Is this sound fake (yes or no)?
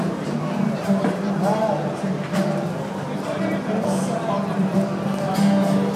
yes